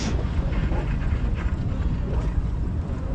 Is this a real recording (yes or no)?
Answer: no